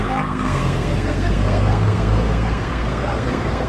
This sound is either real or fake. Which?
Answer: fake